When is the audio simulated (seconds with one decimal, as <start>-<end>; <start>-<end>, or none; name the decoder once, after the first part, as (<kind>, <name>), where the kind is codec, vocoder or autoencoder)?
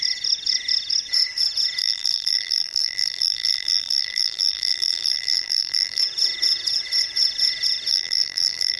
1.8-6.0 (vocoder, BigVGAN v2); 7.9-8.8